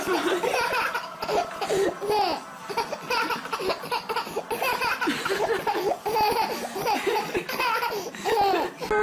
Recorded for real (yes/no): yes